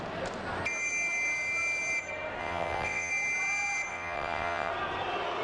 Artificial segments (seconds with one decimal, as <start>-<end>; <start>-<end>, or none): 2.4-3.1; 3.9-4.7